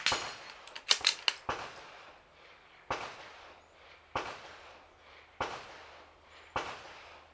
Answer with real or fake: real